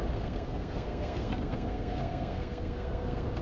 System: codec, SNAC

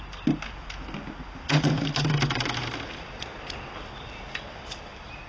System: none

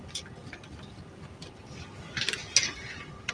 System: none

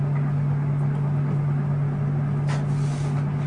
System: none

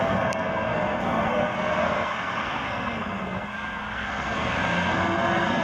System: codec, SNAC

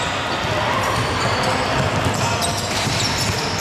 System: none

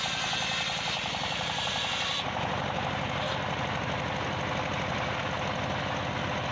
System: none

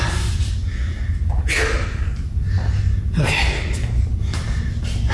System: none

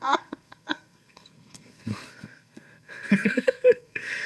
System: codec, SNAC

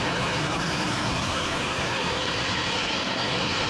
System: codec, SNAC